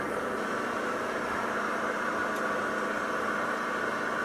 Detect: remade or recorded recorded